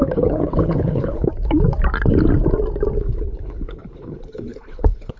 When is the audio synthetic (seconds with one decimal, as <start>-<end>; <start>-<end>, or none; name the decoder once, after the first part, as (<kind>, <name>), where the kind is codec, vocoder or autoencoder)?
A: 0.0-1.3 (codec, HILCodec); 3.0-5.2